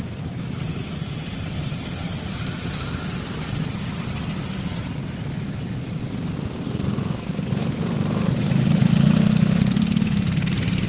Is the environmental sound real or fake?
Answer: fake